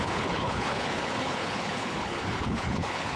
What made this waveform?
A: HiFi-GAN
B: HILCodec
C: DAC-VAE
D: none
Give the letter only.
B